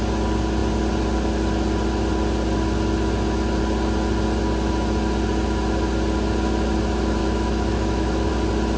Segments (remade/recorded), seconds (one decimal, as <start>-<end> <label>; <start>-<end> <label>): 0.0-7.2 recorded; 7.2-8.3 remade; 8.3-8.8 recorded